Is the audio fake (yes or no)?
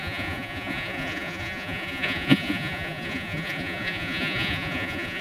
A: yes